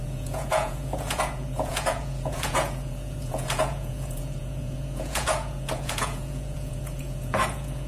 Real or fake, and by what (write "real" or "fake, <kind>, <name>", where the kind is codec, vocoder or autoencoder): fake, vocoder, Vocos